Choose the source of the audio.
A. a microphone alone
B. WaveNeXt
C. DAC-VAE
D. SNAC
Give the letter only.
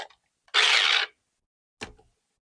A